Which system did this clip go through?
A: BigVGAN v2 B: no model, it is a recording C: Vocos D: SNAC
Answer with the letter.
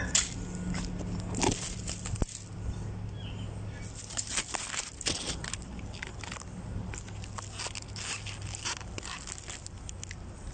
B